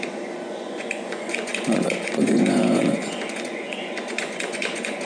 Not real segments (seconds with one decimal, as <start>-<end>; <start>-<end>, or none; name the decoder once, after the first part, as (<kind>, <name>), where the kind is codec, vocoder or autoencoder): 0.0-5.1 (vocoder, Vocos)